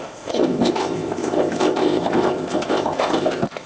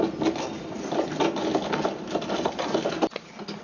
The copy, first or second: first